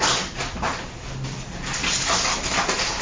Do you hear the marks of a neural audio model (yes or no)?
no